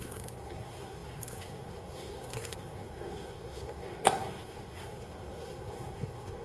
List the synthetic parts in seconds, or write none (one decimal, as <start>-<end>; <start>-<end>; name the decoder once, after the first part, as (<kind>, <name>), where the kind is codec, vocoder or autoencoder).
0.0-6.4 (codec, SNAC)

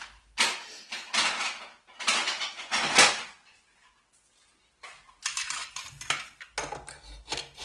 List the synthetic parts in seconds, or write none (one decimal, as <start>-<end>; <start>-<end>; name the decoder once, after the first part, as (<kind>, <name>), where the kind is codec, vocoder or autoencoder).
2.2-4.0 (vocoder, Vocos)

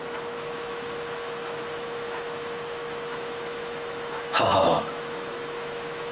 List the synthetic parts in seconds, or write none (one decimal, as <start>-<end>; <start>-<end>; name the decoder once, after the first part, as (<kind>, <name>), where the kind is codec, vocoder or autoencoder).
0.0-6.1 (autoencoder, DAC-VAE)

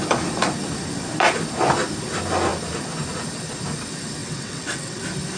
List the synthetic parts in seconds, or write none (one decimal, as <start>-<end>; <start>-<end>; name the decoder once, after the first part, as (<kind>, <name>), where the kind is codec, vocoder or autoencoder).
4.2-5.0 (vocoder, WaveNeXt)

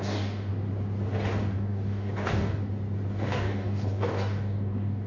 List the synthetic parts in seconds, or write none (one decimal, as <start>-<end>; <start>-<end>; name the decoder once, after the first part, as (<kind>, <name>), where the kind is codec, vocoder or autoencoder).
0.0-0.5 (codec, DAC); 1.4-2.6; 3.1-5.1

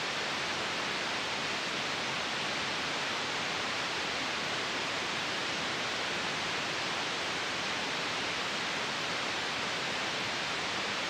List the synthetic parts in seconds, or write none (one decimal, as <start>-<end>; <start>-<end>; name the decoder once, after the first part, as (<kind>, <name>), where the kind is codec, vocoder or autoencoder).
0.0-1.4 (vocoder, BigVGAN v2); 2.2-11.1

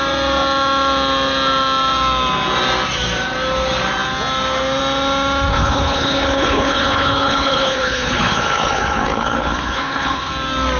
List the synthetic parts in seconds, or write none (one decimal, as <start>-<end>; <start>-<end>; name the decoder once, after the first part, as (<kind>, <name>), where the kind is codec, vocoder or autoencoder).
5.5-10.3 (codec, HILCodec)